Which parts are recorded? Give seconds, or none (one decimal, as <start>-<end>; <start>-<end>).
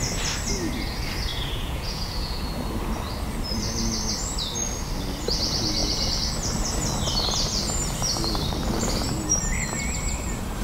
0.0-1.3; 2.4-10.6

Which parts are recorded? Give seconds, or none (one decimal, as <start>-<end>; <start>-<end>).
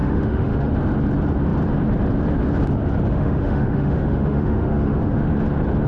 0.7-3.1; 5.3-5.9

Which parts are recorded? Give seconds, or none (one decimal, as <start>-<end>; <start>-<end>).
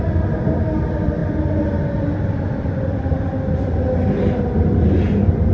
0.0-5.5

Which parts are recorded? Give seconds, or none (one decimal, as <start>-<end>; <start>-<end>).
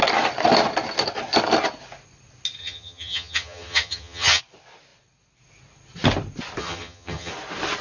0.0-2.6; 4.4-6.6; 7.3-7.8